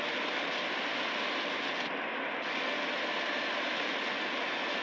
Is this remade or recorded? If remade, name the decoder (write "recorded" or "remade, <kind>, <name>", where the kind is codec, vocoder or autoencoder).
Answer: recorded